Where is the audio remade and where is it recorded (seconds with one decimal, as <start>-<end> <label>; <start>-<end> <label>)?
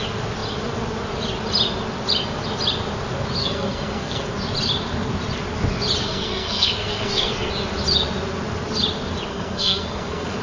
0.0-3.4 recorded; 3.4-4.3 remade; 4.3-6.0 recorded; 6.0-7.5 remade; 7.5-9.3 recorded; 9.3-10.4 remade